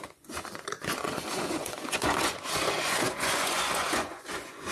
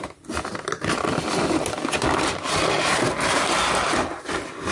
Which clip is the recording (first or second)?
second